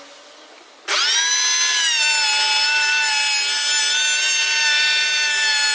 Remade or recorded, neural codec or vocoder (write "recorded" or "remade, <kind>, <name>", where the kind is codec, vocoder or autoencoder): recorded